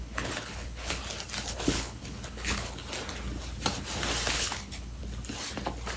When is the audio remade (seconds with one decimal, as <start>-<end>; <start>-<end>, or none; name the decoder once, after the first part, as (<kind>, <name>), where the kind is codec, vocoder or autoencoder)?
0.0-1.0 (codec, HILCodec); 1.5-2.8; 4.3-5.0